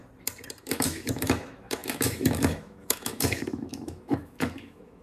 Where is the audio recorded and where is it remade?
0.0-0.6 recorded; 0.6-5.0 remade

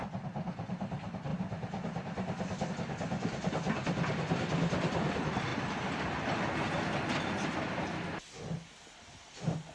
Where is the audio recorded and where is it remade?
0.0-9.7 recorded